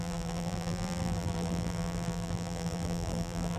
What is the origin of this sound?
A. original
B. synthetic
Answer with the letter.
B